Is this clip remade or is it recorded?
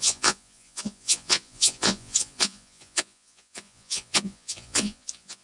remade